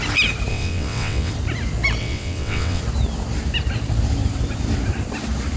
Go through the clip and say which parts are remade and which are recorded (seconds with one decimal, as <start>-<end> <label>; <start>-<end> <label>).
0.0-0.5 recorded; 0.5-1.3 remade; 1.3-2.0 recorded; 2.0-2.8 remade; 2.8-5.6 recorded

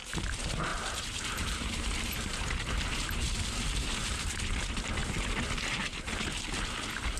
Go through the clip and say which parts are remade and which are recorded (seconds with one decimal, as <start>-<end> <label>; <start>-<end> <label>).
0.0-0.7 recorded; 0.7-4.4 remade; 4.4-7.2 recorded

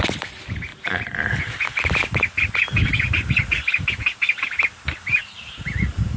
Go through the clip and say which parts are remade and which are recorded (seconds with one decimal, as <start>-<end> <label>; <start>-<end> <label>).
0.0-5.2 recorded; 5.2-6.2 remade

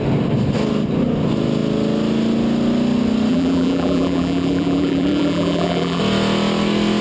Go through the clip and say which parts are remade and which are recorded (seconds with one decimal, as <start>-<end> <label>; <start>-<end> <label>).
0.0-3.3 recorded; 3.3-6.0 remade; 6.0-7.0 recorded

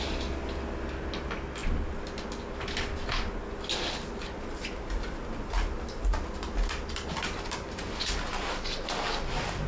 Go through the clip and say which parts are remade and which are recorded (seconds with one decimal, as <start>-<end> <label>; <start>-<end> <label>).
0.0-9.7 recorded

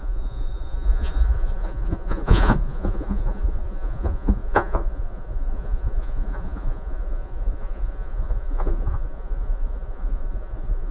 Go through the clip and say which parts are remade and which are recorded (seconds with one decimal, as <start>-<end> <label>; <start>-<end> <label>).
0.0-10.9 remade